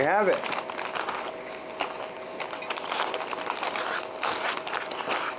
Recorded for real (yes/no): yes